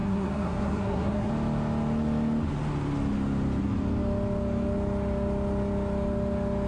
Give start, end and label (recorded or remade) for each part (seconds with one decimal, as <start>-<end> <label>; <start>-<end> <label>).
0.0-1.3 remade; 1.3-6.7 recorded